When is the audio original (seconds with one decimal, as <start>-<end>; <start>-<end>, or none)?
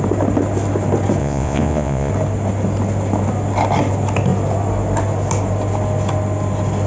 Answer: 0.0-1.2; 2.1-6.9